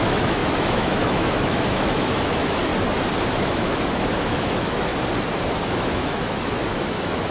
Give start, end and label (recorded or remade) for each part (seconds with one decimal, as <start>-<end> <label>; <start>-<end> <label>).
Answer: 0.0-2.7 remade; 2.7-3.3 recorded; 3.3-4.9 remade; 4.9-5.6 recorded; 5.6-7.3 remade